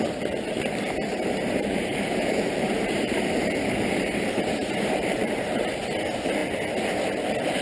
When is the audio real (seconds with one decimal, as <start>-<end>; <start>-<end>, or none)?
0.0-1.1; 5.7-7.6